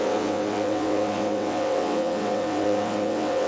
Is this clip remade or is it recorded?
remade